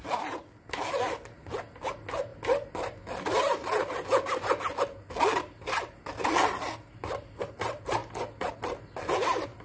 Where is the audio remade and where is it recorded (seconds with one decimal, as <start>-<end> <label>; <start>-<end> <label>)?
0.0-9.6 recorded